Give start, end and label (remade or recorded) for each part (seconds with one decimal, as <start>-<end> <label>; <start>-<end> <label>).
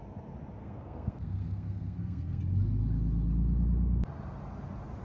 0.0-0.6 recorded; 0.6-2.4 remade; 2.4-5.0 recorded